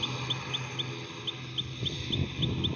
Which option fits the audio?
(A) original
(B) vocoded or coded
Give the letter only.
A